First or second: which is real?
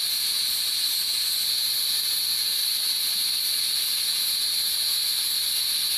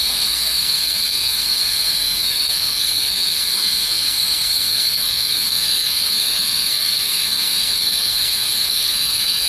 first